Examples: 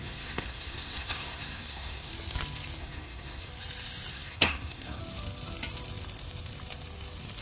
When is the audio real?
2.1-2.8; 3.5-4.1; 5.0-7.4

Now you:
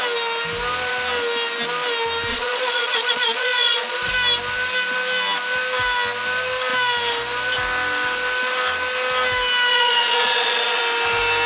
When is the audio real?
0.0-2.3; 4.1-9.7; 10.8-11.5

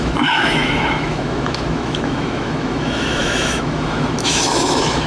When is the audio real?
none